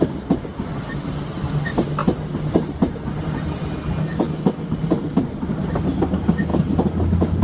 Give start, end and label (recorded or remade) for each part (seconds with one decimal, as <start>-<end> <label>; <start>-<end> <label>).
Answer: 0.0-7.4 recorded